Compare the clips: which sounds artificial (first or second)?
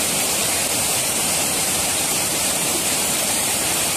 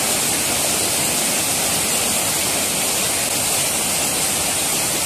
first